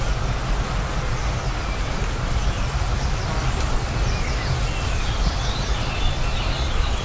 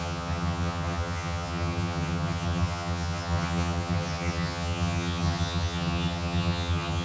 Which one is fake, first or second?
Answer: second